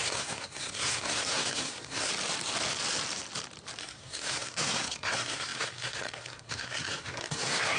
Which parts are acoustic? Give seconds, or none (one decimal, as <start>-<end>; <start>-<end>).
2.1-3.8